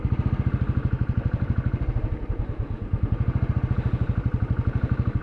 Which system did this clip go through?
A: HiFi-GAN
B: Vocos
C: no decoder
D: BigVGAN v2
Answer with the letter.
D